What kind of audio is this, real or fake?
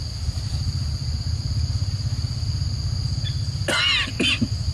real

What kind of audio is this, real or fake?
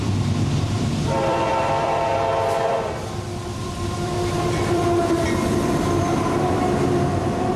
fake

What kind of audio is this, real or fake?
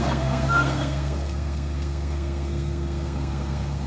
fake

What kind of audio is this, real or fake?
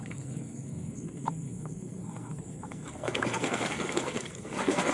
fake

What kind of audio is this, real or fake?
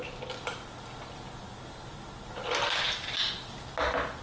real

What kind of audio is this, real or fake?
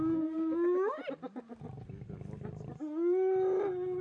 real